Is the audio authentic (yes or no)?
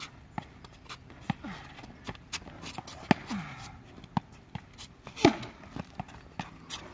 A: yes